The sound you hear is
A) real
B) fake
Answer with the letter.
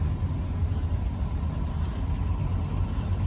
A